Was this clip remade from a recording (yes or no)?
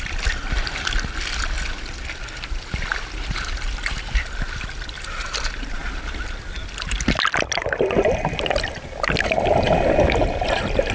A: no